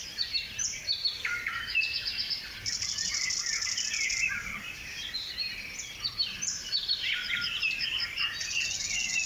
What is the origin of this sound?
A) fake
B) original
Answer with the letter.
A